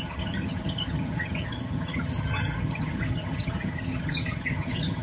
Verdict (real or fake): fake